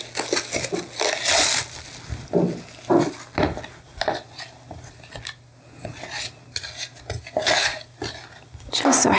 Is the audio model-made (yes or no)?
no